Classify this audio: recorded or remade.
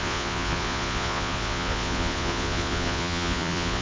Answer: remade